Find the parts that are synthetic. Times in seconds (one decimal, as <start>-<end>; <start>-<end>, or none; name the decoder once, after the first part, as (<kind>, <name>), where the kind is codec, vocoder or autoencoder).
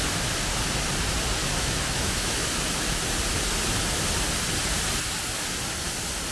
1.4-2.5 (autoencoder, DAC-VAE)